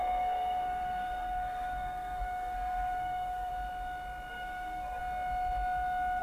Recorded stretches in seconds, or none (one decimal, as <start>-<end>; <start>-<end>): 3.5-4.3; 5.0-6.2